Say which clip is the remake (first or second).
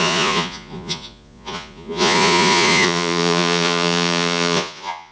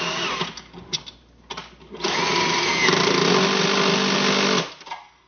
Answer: first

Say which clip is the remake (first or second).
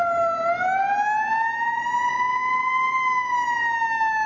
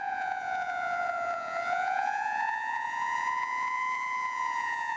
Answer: second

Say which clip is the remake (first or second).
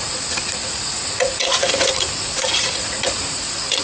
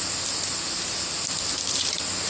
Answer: first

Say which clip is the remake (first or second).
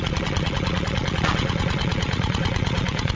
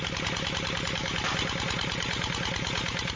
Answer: first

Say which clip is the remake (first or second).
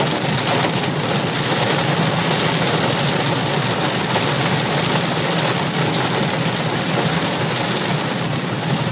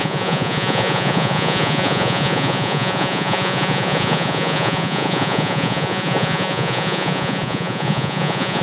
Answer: second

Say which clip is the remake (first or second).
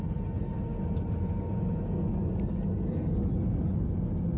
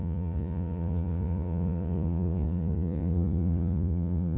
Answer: second